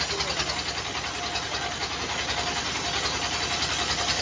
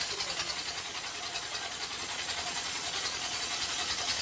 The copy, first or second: second